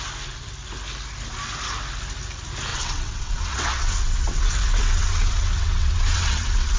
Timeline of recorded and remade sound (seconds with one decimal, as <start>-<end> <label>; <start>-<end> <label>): 0.0-2.7 recorded; 2.7-6.8 remade